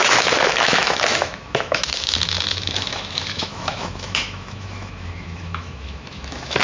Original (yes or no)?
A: no